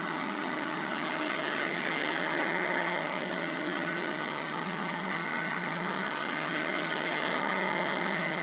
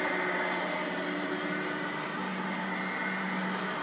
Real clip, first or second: second